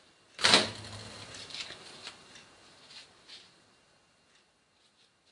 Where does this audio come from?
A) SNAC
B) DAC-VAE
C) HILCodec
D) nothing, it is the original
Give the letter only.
D